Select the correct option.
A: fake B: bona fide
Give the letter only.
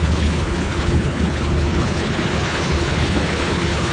A